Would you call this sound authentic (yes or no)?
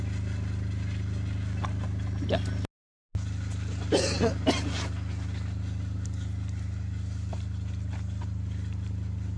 yes